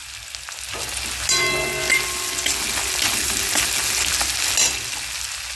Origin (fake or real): real